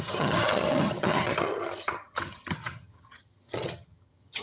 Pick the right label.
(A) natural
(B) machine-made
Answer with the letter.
B